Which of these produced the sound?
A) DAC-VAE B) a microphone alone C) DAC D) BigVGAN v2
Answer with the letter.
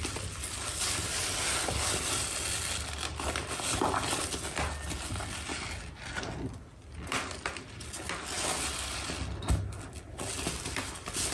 B